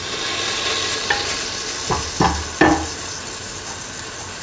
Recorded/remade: recorded